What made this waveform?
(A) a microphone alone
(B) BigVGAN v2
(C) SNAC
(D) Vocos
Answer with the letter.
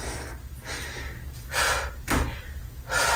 A